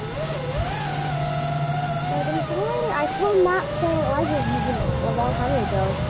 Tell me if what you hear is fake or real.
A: real